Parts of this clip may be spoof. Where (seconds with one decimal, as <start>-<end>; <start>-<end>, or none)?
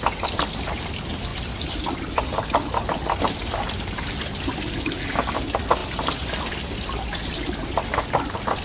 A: 1.3-5.2; 5.8-6.4